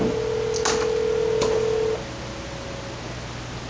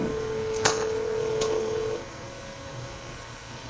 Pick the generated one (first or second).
second